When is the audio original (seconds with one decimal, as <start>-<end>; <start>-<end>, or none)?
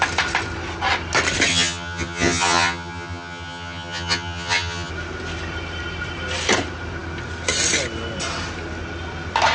0.0-1.5; 4.9-9.5